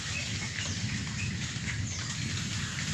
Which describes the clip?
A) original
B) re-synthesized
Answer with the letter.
A